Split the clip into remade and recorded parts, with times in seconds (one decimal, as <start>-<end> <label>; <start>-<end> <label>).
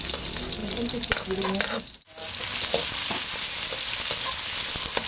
0.0-5.1 recorded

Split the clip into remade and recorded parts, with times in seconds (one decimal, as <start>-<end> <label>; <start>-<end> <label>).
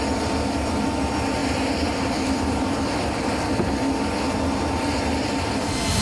0.0-6.0 recorded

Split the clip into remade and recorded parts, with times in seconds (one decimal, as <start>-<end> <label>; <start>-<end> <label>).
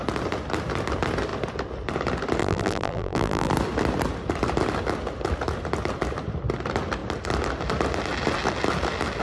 0.0-2.4 recorded; 2.4-3.5 remade; 3.5-9.2 recorded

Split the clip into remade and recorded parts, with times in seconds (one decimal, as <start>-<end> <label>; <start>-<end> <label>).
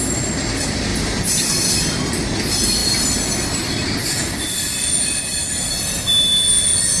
0.0-7.0 recorded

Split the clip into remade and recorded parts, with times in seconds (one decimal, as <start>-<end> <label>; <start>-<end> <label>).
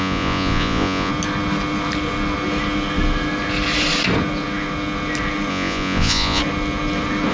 0.0-1.1 remade; 1.1-5.5 recorded; 5.5-6.4 remade; 6.4-7.3 recorded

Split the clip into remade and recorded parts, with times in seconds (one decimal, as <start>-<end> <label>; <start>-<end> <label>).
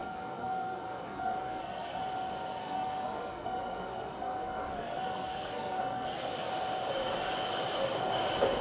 0.0-2.0 remade; 2.0-2.6 recorded; 2.6-6.5 remade; 6.5-8.6 recorded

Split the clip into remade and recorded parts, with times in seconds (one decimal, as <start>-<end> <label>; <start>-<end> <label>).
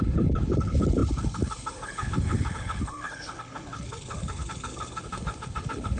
0.0-6.0 remade